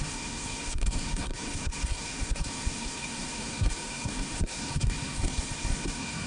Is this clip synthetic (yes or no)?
yes